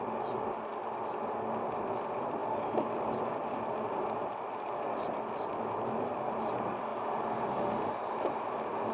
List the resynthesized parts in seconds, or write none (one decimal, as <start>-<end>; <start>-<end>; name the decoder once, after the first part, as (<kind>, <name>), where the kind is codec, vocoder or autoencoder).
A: none